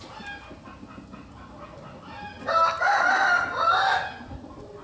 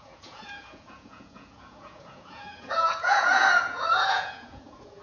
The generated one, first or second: second